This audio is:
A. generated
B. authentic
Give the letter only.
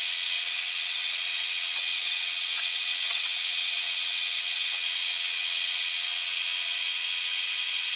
A